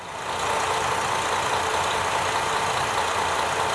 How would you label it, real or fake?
real